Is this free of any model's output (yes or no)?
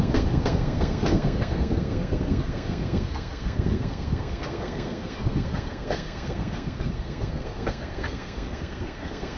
no